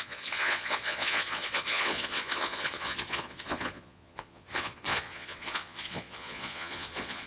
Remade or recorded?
remade